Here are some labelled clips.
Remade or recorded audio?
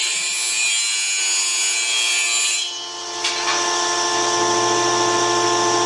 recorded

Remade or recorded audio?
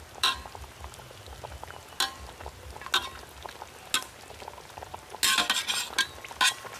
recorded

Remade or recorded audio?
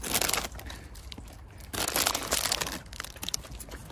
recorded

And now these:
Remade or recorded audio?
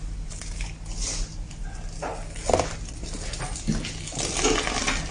recorded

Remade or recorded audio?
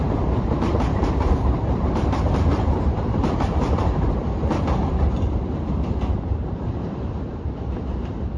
remade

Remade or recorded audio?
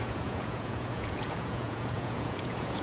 remade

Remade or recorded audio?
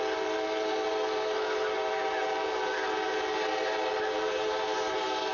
remade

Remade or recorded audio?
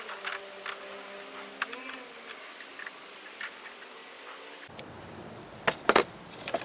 recorded